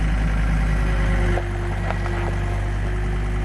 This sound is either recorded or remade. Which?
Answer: recorded